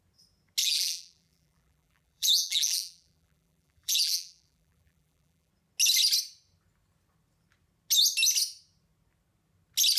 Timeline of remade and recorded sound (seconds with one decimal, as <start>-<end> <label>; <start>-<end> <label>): 0.0-0.6 recorded; 0.6-5.5 remade; 5.5-10.0 recorded